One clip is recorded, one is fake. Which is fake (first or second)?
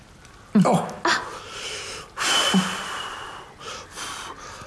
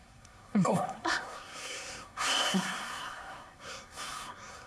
second